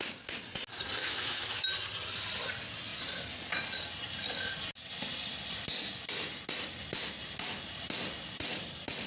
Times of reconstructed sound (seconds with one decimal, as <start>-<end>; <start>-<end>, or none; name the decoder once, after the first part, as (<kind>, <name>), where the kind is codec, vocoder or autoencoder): 1.0-1.6 (autoencoder, DAC-VAE)